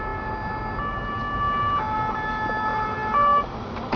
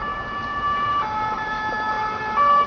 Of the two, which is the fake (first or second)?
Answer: second